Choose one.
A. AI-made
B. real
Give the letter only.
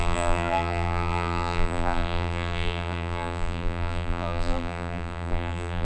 A